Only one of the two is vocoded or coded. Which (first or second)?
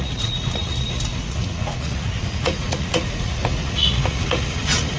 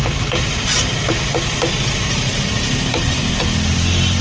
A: first